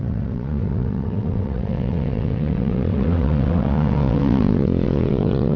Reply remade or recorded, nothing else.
remade